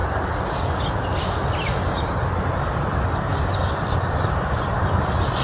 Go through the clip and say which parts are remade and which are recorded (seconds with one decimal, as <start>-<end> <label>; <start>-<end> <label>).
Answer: 0.0-2.4 recorded; 2.4-5.4 remade